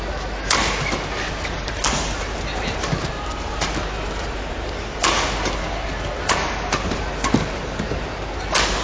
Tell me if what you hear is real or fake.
real